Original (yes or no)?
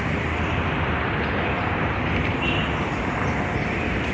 yes